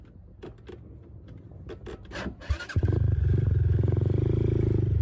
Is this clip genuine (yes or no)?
yes